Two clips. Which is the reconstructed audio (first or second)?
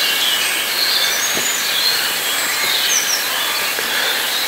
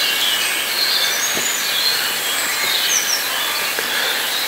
first